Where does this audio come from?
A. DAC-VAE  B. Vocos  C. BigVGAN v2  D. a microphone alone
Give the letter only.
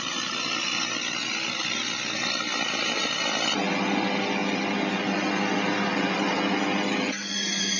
D